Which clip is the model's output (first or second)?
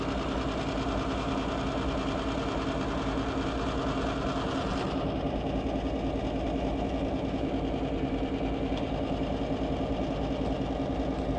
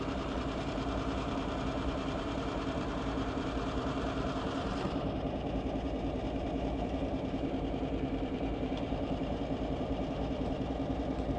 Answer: second